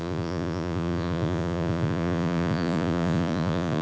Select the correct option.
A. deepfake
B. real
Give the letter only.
A